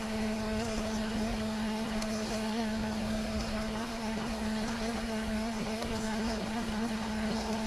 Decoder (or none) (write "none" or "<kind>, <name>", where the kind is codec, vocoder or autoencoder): codec, SNAC